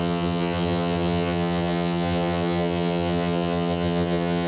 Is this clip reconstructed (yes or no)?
yes